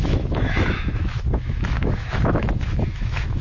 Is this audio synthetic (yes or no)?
yes